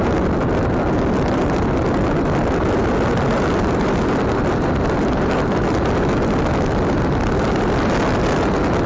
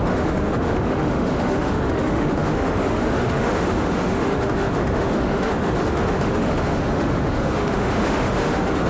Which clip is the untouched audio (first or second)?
first